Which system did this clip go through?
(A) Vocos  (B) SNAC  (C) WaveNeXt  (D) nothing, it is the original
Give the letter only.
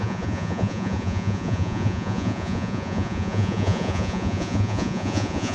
A